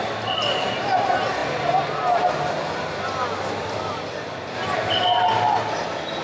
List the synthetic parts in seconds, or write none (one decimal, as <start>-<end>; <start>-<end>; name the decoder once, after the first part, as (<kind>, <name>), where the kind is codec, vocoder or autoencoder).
none